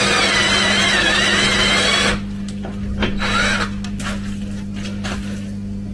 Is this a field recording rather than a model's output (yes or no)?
yes